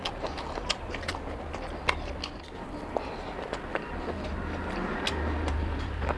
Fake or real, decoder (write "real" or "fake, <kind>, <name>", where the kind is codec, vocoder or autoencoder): real